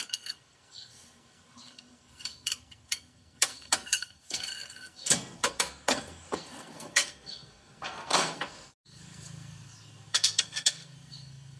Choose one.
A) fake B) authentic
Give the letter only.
A